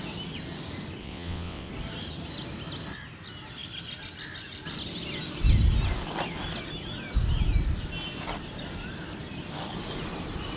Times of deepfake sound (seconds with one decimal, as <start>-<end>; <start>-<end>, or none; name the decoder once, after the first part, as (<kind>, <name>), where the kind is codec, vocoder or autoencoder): 1.0-1.7 (vocoder, WaveNeXt)